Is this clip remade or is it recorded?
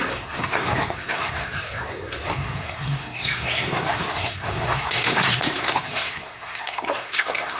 remade